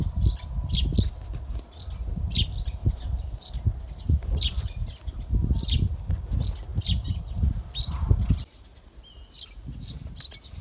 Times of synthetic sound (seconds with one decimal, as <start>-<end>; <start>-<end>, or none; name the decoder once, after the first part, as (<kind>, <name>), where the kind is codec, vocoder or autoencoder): 2.8-3.5 (vocoder, BigVGAN v2); 6.7-7.2